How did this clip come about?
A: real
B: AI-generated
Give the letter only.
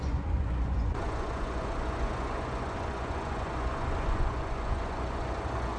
B